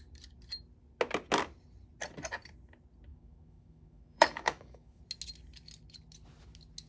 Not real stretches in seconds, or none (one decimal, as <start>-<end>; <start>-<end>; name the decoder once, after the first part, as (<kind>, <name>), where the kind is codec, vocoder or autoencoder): 3.1-5.0 (autoencoder, DAC-VAE)

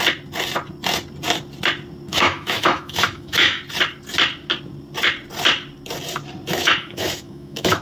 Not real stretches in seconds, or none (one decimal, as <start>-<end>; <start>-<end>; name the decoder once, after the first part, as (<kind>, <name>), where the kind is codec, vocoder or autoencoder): 2.1-3.6 (autoencoder, DAC-VAE); 6.6-7.8

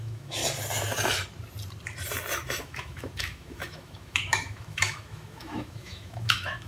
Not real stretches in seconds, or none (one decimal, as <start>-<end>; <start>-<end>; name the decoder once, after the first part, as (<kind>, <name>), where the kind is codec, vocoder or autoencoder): 0.0-0.4 (autoencoder, DAC-VAE); 2.6-6.7

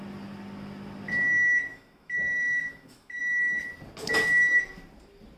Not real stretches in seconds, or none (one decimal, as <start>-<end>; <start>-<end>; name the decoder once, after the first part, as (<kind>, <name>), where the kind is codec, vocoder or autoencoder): 1.7-3.2 (autoencoder, DAC-VAE)